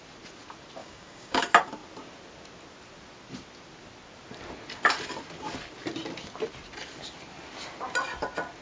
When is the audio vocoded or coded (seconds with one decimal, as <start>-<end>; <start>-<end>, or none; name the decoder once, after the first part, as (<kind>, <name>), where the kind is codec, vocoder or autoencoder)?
0.8-1.4 (codec, DAC)